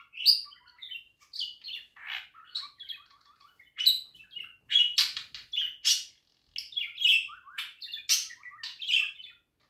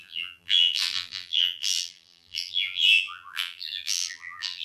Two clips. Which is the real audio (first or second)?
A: first